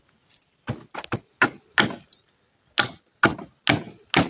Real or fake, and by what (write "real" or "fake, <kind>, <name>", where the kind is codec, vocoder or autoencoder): real